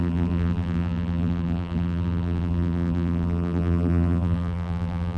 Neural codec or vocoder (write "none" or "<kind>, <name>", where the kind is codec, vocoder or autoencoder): vocoder, BigVGAN v2